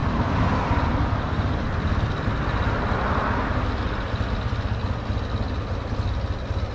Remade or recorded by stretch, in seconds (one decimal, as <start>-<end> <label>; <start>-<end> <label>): 0.0-6.7 recorded